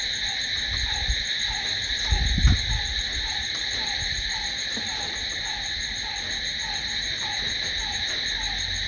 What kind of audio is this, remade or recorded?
recorded